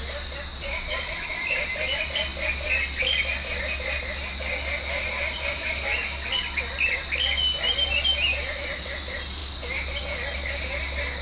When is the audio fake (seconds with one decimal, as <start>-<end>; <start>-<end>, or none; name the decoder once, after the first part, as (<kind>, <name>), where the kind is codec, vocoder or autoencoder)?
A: 0.5-1.6 (vocoder, Vocos)